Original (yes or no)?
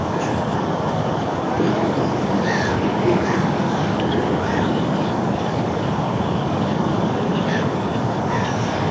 no